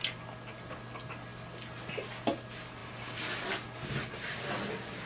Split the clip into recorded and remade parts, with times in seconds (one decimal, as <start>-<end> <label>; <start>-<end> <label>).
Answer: 0.0-5.1 recorded